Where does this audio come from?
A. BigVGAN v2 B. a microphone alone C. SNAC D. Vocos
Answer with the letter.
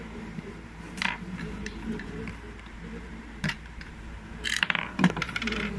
A